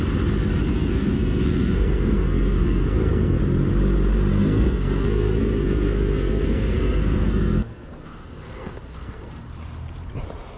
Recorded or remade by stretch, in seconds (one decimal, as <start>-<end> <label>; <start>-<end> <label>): 0.0-0.4 recorded; 0.4-3.4 remade; 3.4-4.3 recorded; 4.3-9.4 remade; 9.4-10.6 recorded